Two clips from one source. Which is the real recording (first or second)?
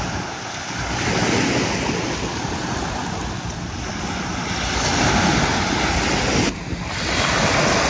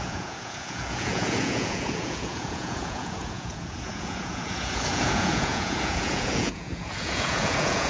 first